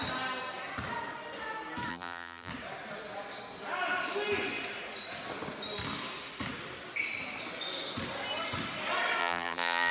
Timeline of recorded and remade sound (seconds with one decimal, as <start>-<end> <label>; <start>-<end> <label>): 0.0-1.9 recorded; 1.9-2.5 remade; 2.5-9.2 recorded; 9.2-9.9 remade